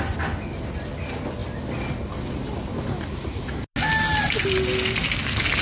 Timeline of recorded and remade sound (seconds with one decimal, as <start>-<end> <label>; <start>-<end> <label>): 0.0-5.6 recorded